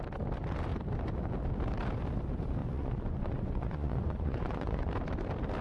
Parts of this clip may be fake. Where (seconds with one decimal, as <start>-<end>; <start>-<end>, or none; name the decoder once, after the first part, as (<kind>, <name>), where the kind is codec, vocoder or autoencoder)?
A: 2.6-4.9 (vocoder, Vocos)